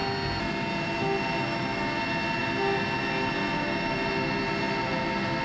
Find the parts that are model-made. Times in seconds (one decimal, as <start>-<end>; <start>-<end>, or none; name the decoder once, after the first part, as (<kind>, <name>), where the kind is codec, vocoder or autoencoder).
none